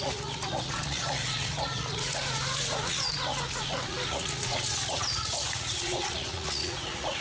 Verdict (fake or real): fake